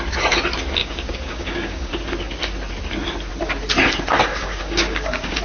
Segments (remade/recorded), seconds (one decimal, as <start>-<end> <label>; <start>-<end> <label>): 0.0-0.8 recorded; 0.8-1.9 remade; 1.9-4.3 recorded; 4.3-5.4 remade